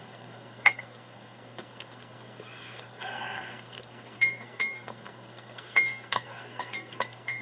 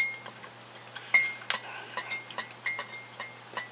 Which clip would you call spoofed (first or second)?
first